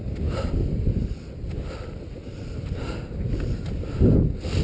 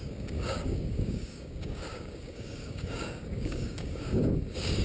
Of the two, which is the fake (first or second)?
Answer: second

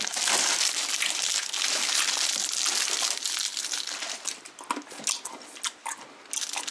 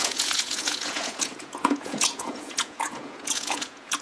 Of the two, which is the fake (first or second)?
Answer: second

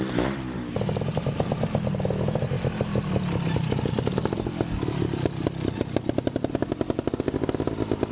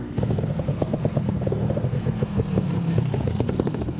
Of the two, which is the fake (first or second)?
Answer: second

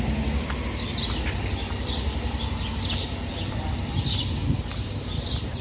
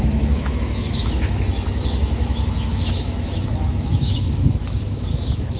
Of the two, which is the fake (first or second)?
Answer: second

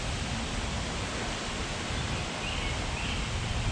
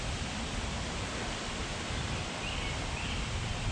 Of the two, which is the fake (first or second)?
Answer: second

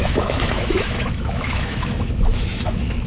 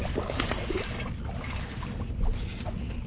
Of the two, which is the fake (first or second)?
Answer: first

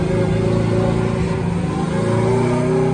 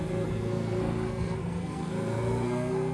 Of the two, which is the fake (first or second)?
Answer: second